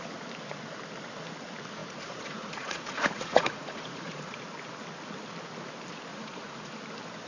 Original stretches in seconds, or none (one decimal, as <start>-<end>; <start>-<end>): 0.0-1.8; 4.3-6.1; 6.7-7.3